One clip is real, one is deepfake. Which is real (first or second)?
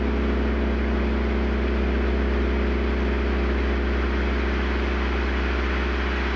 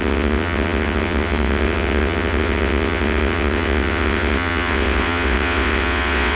first